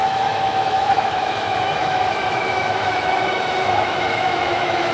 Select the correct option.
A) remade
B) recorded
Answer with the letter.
A